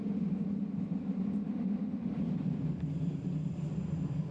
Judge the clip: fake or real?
real